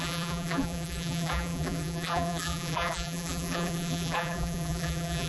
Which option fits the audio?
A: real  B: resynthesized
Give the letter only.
B